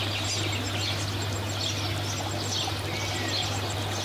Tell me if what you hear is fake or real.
real